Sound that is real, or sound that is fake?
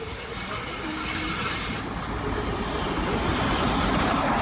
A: real